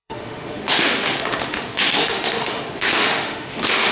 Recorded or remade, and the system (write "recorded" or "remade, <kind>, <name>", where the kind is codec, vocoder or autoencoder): remade, autoencoder, DAC-VAE